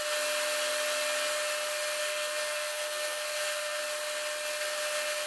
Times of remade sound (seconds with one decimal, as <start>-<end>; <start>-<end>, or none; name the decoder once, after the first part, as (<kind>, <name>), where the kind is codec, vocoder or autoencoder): 2.0-3.8 (codec, SNAC)